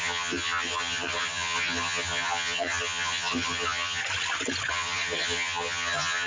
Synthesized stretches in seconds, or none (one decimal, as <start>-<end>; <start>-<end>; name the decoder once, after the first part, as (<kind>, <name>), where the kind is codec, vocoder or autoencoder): 0.0-4.0 (vocoder, HiFi-GAN); 4.7-6.3